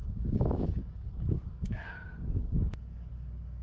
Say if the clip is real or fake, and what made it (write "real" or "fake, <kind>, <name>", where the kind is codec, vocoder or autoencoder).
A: fake, codec, DAC